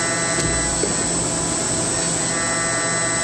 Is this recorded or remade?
recorded